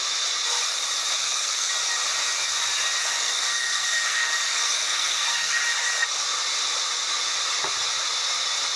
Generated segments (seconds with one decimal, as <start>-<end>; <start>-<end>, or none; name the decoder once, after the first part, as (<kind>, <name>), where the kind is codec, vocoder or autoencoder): 1.2-1.7 (codec, SNAC); 3.0-5.6